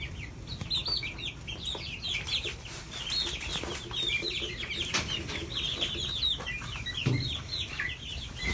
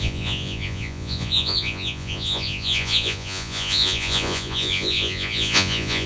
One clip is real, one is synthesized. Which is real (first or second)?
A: first